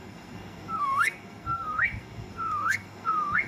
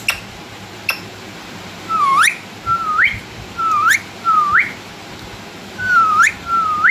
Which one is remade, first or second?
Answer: first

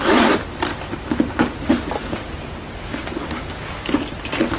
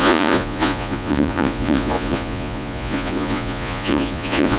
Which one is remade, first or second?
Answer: second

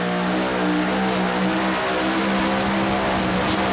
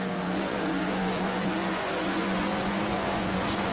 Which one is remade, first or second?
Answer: second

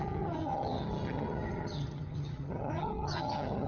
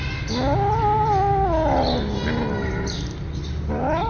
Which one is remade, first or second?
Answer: first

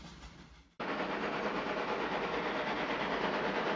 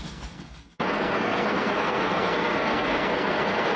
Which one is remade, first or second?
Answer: second